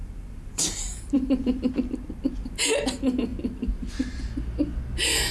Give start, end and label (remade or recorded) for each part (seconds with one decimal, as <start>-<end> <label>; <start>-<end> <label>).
0.0-1.7 remade; 1.7-5.3 recorded

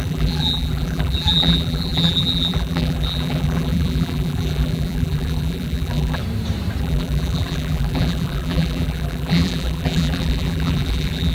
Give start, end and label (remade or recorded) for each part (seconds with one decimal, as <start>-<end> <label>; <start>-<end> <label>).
0.0-6.2 remade; 6.2-6.8 recorded; 6.8-11.3 remade